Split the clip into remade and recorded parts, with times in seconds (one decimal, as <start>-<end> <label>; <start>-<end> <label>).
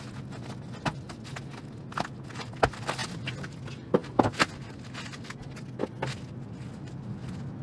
0.0-7.6 recorded